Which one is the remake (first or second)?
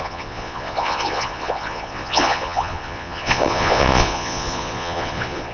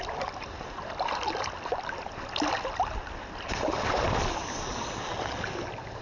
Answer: first